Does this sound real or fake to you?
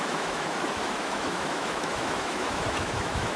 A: fake